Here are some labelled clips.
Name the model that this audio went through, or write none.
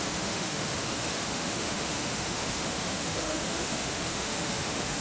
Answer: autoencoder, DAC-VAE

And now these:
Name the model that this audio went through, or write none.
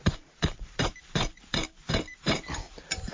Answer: vocoder, BigVGAN v2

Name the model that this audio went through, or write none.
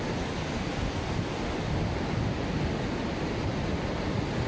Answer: none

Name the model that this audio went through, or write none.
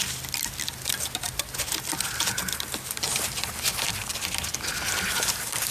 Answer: vocoder, BigVGAN v2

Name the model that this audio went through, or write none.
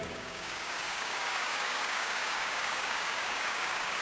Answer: codec, DAC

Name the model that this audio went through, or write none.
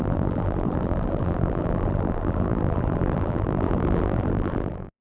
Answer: vocoder, BigVGAN v2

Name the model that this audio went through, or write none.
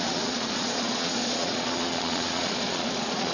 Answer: vocoder, Vocos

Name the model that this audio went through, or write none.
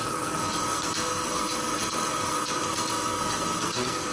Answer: codec, SNAC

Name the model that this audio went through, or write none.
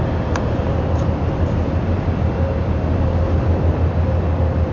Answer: none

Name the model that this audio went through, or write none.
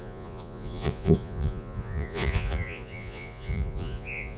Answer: vocoder, Vocos